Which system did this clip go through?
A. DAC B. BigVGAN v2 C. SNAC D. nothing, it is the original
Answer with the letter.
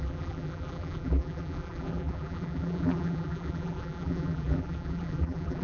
B